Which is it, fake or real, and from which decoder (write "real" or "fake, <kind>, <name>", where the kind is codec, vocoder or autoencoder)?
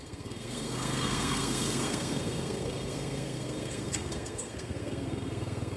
fake, codec, SNAC